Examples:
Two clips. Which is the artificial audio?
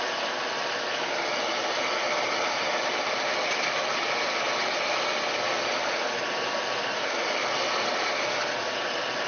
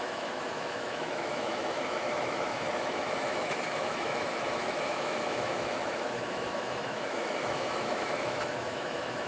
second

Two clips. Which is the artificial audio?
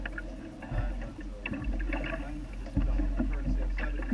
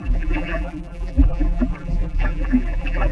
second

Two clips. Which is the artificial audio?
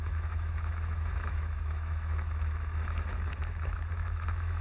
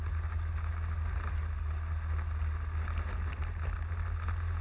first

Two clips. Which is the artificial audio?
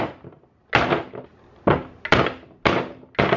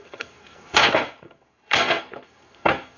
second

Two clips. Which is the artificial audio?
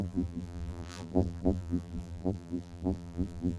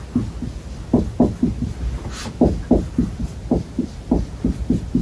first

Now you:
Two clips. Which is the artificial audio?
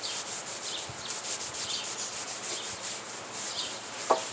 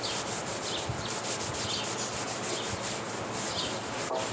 first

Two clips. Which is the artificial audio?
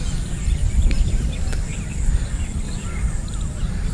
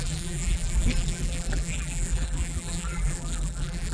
second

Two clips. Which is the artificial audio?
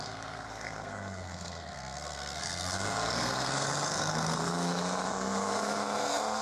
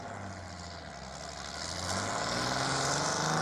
first